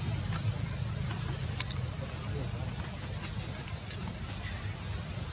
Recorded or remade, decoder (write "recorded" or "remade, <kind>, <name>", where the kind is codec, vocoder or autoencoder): recorded